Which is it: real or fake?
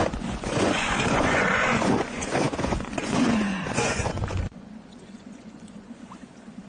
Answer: fake